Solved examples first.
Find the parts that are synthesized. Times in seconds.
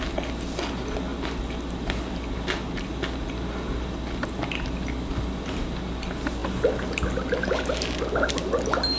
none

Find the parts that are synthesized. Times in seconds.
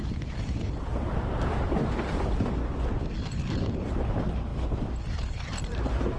0.0-6.2 (vocoder, BigVGAN v2)